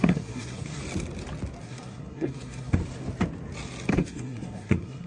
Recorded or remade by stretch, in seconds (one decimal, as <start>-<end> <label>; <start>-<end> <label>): 0.0-0.8 remade; 0.8-1.6 recorded; 1.6-2.8 remade; 2.8-3.9 recorded; 3.9-5.1 remade